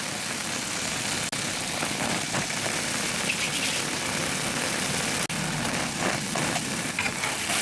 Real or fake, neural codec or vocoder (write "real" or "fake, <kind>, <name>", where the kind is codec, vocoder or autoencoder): real